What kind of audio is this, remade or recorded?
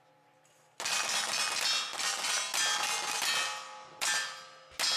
recorded